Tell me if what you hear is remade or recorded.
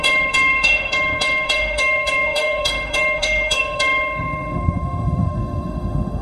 remade